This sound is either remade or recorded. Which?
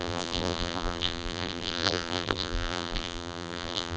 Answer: remade